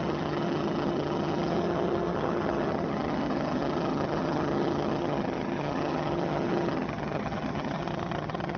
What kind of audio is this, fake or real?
fake